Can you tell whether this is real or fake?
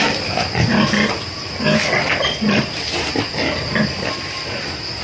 real